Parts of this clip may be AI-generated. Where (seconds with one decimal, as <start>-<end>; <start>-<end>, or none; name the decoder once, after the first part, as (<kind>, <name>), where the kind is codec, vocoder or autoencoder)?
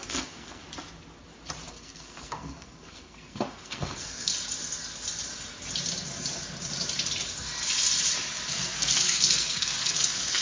0.0-0.6 (codec, SNAC); 1.7-4.3; 8.5-10.4